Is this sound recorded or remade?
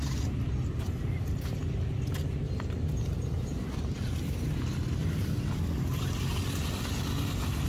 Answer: recorded